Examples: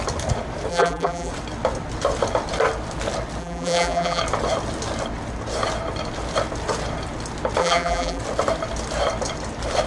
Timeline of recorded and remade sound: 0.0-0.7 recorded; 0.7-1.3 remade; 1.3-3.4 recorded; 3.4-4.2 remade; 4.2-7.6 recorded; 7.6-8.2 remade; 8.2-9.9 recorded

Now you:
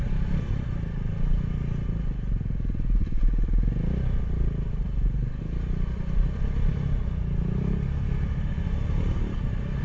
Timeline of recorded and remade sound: 0.0-9.8 recorded

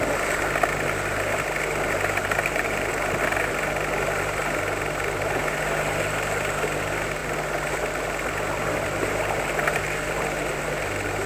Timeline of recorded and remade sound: 0.0-2.2 recorded; 2.2-2.9 remade; 2.9-11.3 recorded

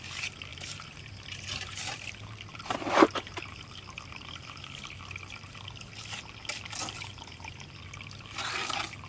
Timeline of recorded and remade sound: 0.0-0.5 recorded; 0.5-4.0 remade; 4.0-9.1 recorded

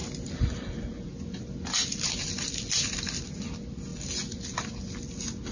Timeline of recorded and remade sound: 0.0-5.5 recorded

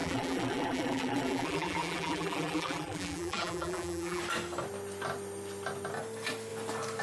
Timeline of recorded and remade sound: 0.0-4.2 remade; 4.2-7.0 recorded